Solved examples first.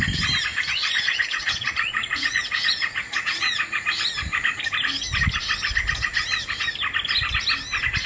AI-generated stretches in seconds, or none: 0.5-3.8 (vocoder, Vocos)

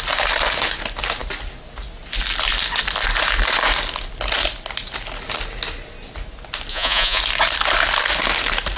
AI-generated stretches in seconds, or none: 6.7-7.2 (vocoder, Vocos)

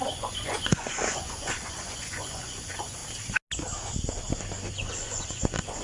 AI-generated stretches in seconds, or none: 0.0-3.0 (vocoder, Vocos); 4.7-5.8

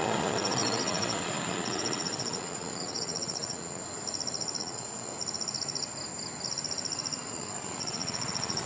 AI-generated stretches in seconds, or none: 0.0-3.8 (vocoder, Vocos); 4.6-5.1; 7.3-8.7

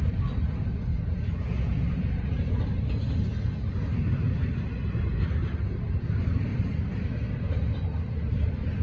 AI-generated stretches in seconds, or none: 0.9-2.1 (vocoder, Vocos)

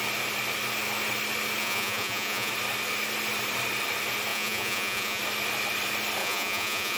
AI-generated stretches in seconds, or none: 1.6-2.5 (vocoder, Vocos); 4.3-5.2; 6.2-7.0